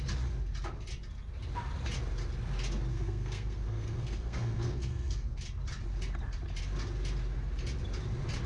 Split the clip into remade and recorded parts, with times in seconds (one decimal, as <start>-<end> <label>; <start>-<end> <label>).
0.0-2.9 recorded; 2.9-5.4 remade; 5.4-8.5 recorded